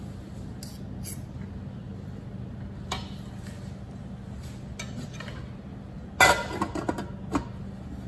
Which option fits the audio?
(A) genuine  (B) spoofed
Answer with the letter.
A